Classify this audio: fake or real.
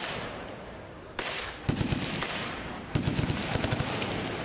real